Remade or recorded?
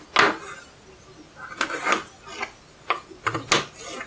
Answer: recorded